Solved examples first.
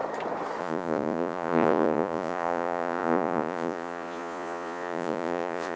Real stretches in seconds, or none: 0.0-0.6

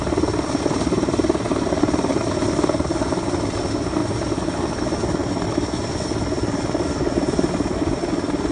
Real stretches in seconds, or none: 0.0-8.5

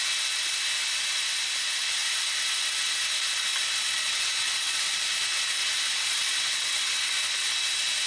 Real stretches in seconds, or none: 0.0-3.5; 5.1-5.6; 7.0-8.1

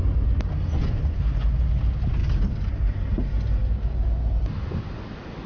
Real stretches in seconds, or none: 0.0-0.7; 1.6-5.5

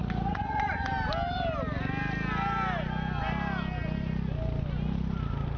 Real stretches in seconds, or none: 0.9-5.6